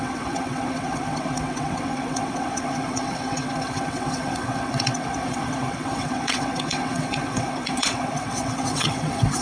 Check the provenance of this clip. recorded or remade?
remade